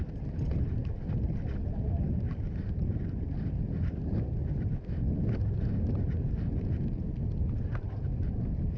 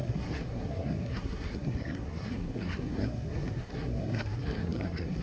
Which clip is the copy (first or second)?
second